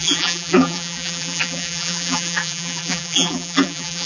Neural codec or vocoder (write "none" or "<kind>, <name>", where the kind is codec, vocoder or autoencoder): vocoder, BigVGAN v2